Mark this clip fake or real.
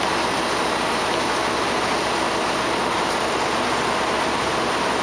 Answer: real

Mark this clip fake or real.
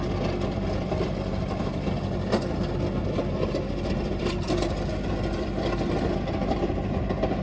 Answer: fake